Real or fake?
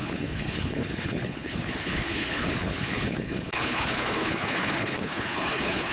fake